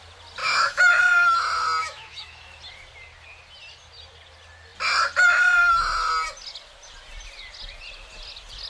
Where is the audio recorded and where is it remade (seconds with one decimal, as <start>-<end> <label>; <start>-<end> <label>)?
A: 0.0-0.4 recorded; 0.4-1.0 remade; 1.0-1.8 recorded; 1.8-2.6 remade; 2.6-8.7 recorded